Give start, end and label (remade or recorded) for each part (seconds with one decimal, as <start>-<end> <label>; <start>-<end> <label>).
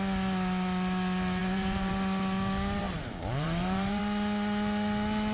0.0-1.4 recorded; 1.4-1.9 remade; 1.9-2.8 recorded; 2.8-4.0 remade; 4.0-5.3 recorded